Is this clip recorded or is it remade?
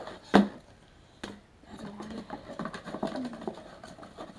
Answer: recorded